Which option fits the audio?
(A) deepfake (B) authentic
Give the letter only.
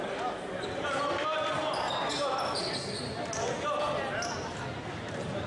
B